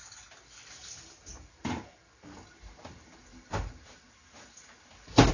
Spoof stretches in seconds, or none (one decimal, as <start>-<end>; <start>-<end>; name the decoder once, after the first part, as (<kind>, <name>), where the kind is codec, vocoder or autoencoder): 1.5-2.0 (vocoder, BigVGAN v2)